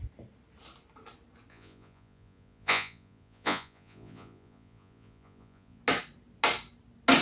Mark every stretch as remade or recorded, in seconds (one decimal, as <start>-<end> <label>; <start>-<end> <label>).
0.0-1.5 recorded; 1.5-5.8 remade; 5.8-7.2 recorded